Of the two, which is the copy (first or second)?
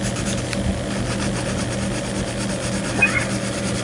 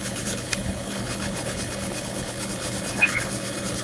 second